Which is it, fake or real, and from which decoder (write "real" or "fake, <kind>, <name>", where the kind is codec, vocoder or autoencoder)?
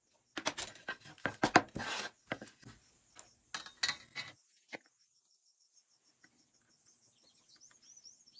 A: real